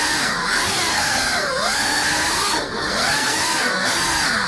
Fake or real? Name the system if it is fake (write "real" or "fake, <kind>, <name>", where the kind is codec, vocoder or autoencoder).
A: fake, codec, SNAC